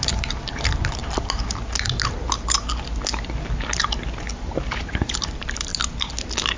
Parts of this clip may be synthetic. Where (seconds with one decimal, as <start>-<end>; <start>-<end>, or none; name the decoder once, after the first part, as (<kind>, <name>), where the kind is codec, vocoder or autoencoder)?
0.0-1.0 (vocoder, BigVGAN v2); 4.3-5.7